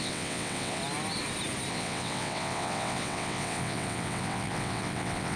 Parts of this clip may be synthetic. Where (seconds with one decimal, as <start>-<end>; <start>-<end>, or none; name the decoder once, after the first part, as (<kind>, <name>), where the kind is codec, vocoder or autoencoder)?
0.0-0.8 (vocoder, WaveNeXt); 1.7-5.4